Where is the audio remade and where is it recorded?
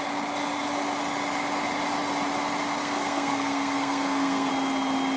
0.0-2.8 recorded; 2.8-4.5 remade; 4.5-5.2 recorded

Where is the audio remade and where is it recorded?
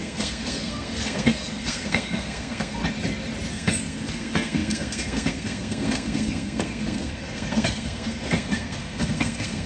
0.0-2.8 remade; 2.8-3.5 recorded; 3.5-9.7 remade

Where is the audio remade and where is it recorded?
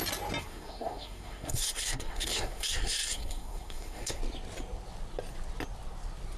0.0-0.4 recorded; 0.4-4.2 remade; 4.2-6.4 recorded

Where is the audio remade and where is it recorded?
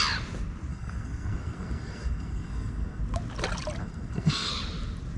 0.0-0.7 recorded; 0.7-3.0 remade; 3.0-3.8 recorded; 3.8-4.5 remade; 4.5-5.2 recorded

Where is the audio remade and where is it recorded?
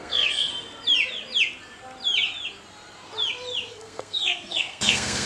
0.0-0.5 remade; 0.5-3.7 recorded; 3.7-5.3 remade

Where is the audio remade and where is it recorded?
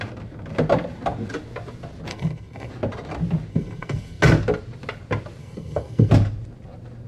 0.0-2.1 recorded; 2.1-2.7 remade; 2.7-3.5 recorded; 3.5-4.2 remade; 4.2-5.4 recorded; 5.4-6.1 remade; 6.1-7.1 recorded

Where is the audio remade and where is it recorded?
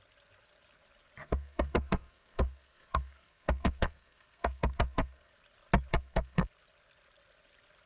0.0-1.2 recorded; 1.2-5.3 remade; 5.3-5.9 recorded; 5.9-6.5 remade; 6.5-7.9 recorded